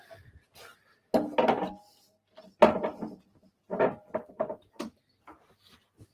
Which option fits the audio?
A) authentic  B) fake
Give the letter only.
A